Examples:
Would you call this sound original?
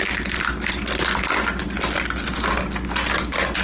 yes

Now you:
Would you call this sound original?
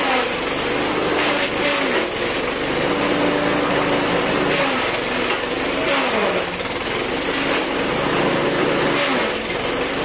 yes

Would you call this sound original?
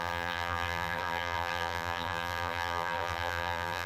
no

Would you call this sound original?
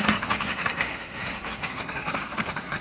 no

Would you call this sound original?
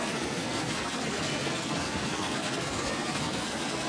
no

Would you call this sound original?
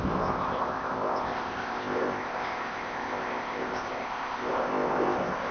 no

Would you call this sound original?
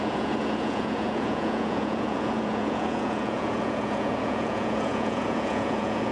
no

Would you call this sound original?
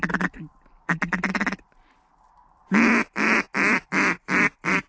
yes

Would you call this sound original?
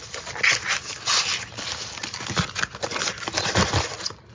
yes